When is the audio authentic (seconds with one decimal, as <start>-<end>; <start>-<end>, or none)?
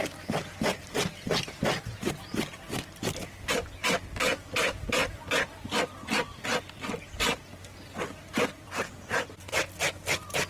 3.2-4.2; 5.0-8.5